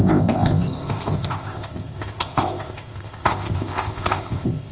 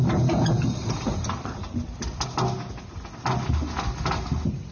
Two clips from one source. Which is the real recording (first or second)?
second